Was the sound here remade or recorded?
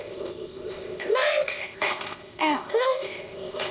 remade